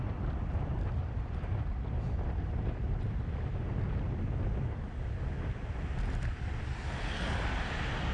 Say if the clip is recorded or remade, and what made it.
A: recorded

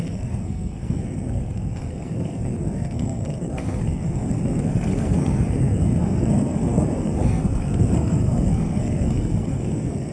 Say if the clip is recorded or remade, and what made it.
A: remade, codec, SNAC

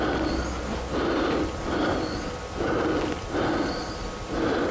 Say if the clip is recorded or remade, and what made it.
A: recorded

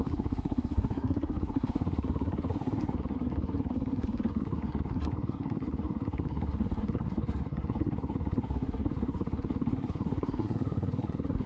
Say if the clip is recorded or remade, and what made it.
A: remade, codec, SNAC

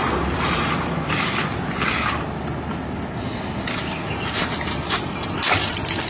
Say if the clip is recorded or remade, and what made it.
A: recorded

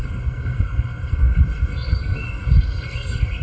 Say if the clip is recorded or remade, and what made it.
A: remade, codec, SNAC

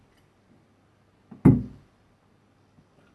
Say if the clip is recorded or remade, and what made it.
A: recorded